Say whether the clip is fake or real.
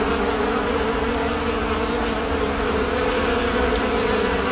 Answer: real